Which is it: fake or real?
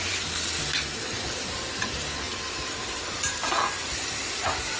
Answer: real